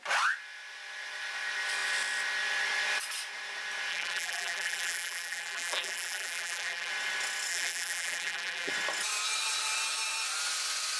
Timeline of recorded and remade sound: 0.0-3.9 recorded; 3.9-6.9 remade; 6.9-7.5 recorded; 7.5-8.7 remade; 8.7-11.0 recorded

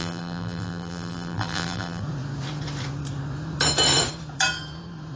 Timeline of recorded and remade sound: 0.0-2.0 remade; 2.0-5.2 recorded

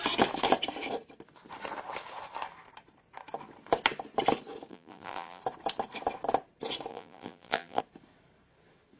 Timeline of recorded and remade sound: 0.0-4.7 recorded; 4.7-5.4 remade; 5.4-6.9 recorded; 6.9-7.8 remade; 7.8-9.0 recorded